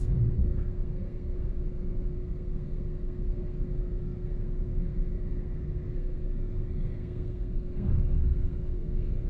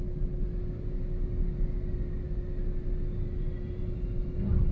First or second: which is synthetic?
first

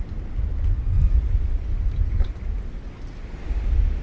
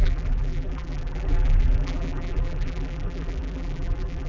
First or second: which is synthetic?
second